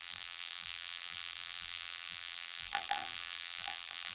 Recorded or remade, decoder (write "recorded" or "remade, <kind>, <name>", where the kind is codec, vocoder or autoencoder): remade, vocoder, BigVGAN v2